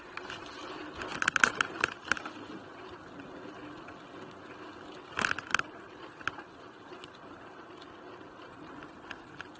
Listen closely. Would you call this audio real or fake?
real